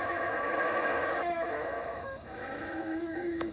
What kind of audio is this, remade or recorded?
remade